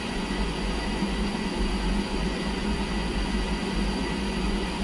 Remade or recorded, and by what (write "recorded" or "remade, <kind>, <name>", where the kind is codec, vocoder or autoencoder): remade, vocoder, Vocos